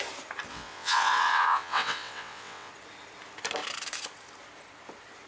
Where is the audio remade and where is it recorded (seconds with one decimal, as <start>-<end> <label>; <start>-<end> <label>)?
0.0-0.5 recorded; 0.5-2.7 remade; 2.7-5.3 recorded